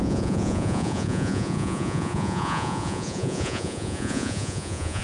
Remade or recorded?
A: remade